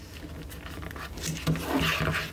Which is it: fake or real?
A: real